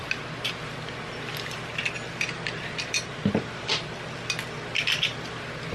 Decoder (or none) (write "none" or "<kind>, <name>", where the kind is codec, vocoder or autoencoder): none